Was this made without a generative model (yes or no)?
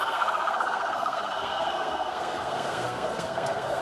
no